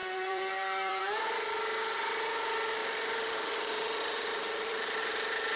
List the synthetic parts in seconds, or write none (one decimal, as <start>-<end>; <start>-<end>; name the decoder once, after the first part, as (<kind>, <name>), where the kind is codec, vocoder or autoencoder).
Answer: 0.0-1.0 (vocoder, BigVGAN v2); 2.8-5.1